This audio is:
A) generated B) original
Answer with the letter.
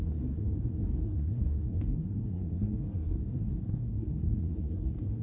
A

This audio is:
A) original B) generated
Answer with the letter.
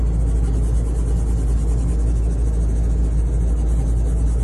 A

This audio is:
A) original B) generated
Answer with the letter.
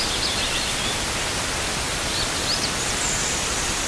A